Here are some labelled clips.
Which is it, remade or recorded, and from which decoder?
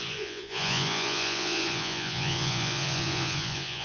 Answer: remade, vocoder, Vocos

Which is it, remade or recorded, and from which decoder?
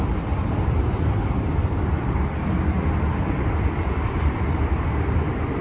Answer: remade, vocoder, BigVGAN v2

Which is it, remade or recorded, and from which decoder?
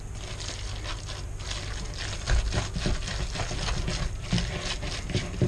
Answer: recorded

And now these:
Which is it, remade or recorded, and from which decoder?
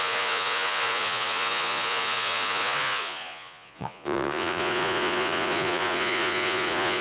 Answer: remade, vocoder, Vocos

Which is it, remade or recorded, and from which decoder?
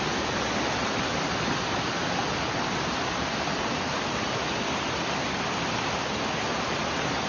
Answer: recorded